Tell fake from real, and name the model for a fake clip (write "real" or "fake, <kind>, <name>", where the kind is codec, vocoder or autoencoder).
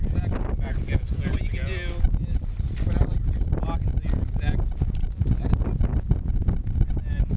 real